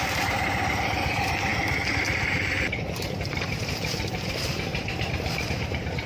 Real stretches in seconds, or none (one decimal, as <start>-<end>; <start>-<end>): 1.5-2.3